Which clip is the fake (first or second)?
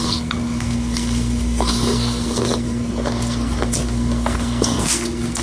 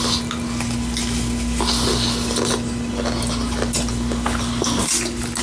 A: first